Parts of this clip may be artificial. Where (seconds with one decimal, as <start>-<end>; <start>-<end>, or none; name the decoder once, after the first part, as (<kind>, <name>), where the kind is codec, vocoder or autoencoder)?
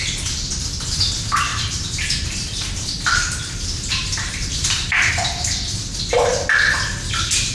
1.5-5.1 (vocoder, BigVGAN v2)